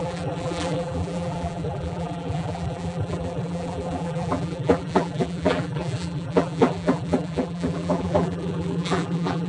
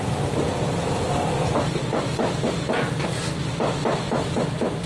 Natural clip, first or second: second